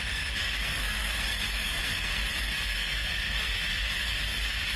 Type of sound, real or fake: fake